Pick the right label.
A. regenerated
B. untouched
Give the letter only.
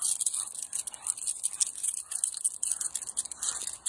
B